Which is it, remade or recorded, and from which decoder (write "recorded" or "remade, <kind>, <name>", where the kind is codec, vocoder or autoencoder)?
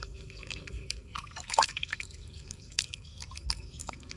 remade, codec, SNAC